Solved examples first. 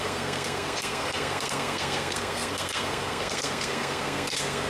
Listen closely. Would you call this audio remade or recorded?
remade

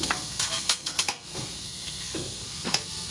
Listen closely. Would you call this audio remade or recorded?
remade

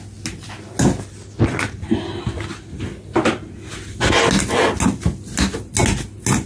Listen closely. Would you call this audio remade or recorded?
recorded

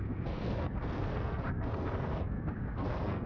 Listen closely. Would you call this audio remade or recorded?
remade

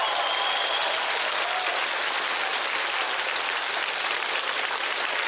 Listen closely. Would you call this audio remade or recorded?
recorded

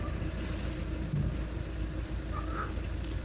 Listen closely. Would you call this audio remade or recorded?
recorded